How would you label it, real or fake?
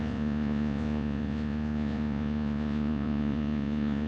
fake